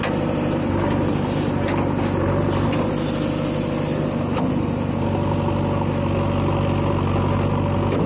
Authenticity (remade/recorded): recorded